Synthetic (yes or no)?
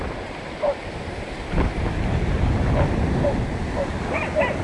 no